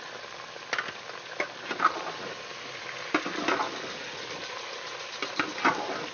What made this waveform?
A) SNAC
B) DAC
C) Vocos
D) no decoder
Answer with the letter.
D